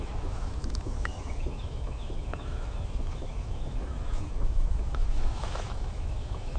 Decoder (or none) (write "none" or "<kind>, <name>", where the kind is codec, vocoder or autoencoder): autoencoder, DAC-VAE